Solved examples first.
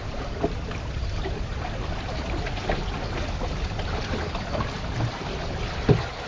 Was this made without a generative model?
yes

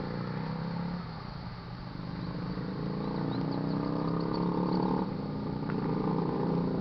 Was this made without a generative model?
yes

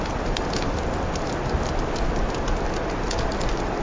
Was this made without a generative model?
yes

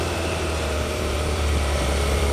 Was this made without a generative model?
no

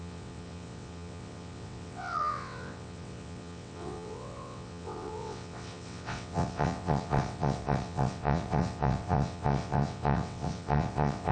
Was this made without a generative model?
no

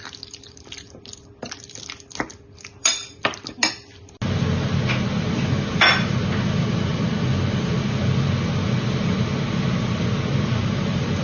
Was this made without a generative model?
yes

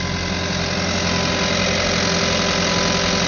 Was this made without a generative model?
yes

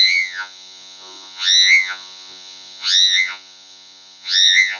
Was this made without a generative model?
no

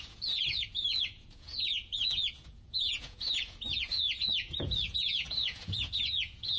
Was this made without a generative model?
no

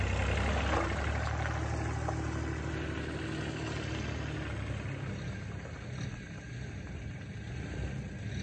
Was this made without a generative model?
yes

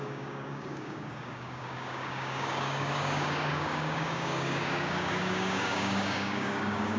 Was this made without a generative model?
no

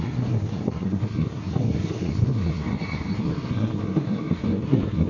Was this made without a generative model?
no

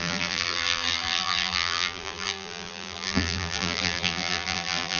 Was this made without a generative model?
no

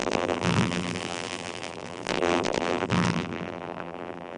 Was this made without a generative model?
no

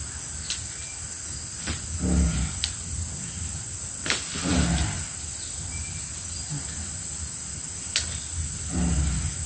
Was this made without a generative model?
yes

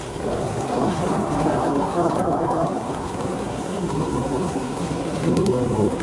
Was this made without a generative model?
no